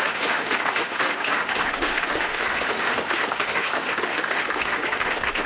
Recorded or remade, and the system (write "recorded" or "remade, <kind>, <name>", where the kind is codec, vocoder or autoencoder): remade, autoencoder, DAC-VAE